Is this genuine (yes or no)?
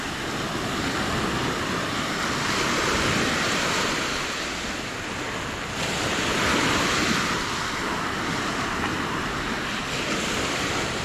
yes